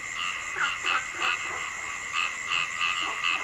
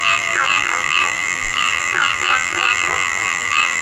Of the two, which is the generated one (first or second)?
second